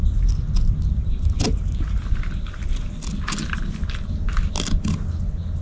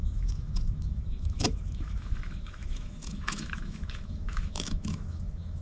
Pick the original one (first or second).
first